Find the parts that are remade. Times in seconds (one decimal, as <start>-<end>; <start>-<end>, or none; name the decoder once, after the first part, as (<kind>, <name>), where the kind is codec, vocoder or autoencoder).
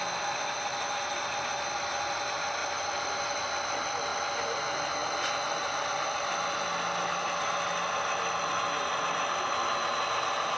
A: 2.6-3.1 (vocoder, BigVGAN v2); 4.1-4.6